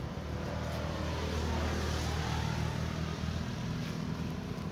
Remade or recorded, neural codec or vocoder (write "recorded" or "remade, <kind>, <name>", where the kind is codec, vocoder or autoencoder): recorded